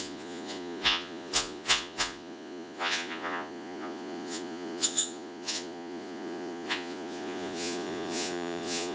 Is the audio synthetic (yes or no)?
yes